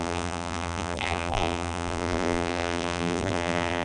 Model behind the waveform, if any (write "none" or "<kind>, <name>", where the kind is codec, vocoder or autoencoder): vocoder, BigVGAN v2